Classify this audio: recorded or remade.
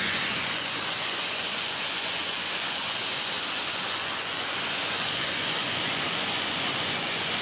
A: remade